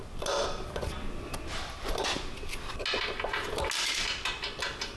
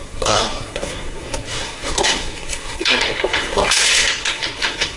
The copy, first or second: second